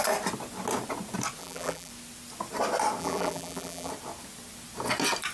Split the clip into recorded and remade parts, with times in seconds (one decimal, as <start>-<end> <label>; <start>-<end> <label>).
0.0-1.4 recorded; 1.4-1.9 remade; 1.9-3.0 recorded; 3.0-3.9 remade; 3.9-5.3 recorded

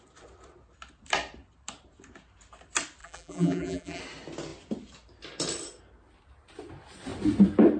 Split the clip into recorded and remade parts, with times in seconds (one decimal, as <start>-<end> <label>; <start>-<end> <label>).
0.0-3.0 recorded; 3.0-4.0 remade; 4.0-7.8 recorded

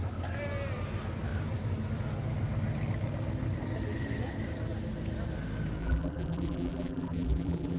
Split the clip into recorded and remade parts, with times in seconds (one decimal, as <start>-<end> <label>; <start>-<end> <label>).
0.0-5.8 recorded; 5.8-7.8 remade

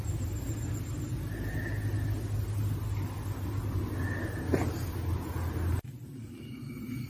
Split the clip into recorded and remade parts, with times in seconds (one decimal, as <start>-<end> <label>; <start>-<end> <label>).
0.0-0.6 remade; 0.6-7.1 recorded

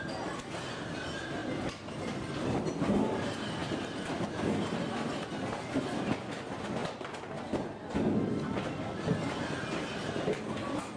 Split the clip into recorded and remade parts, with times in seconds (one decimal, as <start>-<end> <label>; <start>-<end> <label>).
0.0-11.0 recorded

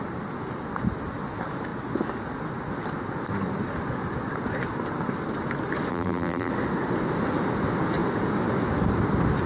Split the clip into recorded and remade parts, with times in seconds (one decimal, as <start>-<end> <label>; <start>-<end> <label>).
0.0-5.9 recorded; 5.9-6.5 remade; 6.5-9.5 recorded